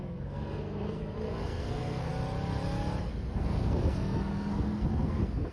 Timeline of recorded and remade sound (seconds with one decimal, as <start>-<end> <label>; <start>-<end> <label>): 0.0-2.1 remade; 2.1-3.0 recorded; 3.0-5.5 remade